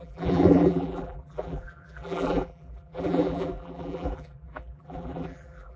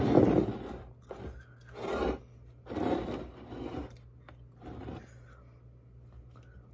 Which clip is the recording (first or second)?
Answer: second